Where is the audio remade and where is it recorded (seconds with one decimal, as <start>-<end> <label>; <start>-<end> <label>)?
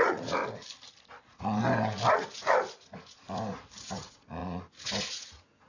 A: 0.0-0.4 remade; 0.4-1.2 recorded; 1.2-1.6 remade; 1.6-2.1 recorded; 2.1-5.7 remade